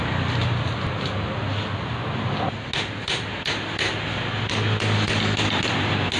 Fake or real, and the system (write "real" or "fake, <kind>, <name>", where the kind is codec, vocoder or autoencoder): real